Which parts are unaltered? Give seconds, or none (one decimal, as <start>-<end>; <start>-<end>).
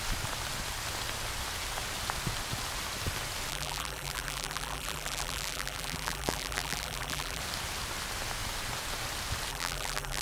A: 0.0-3.5; 7.4-9.5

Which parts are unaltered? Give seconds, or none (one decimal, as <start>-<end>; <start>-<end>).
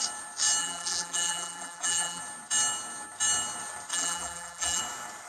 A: 0.0-0.6; 2.2-3.9; 4.8-5.3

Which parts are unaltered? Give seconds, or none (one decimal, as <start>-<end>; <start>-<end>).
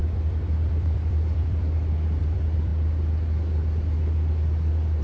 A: 2.7-5.0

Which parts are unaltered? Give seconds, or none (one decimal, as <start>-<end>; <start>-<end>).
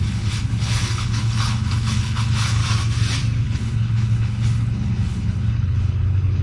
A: 2.6-3.4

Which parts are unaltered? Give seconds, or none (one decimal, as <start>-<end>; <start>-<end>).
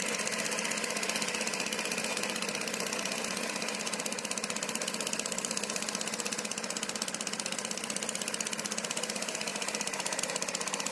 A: 0.0-9.5; 10.2-10.9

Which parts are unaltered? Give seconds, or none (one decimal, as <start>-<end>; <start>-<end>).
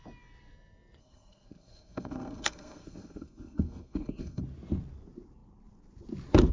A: 0.0-1.0; 4.4-6.5